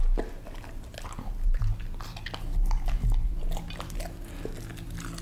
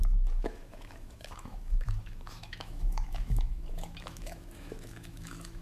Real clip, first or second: first